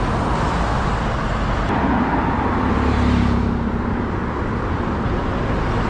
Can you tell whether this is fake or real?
real